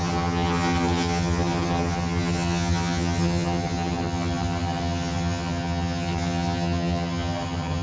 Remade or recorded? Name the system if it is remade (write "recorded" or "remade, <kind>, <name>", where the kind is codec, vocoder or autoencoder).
remade, vocoder, HiFi-GAN